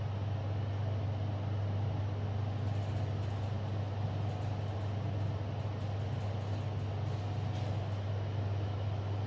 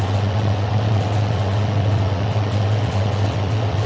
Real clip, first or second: first